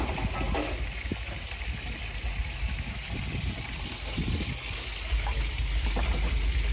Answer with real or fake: real